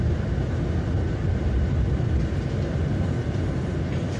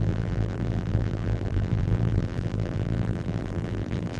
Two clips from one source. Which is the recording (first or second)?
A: first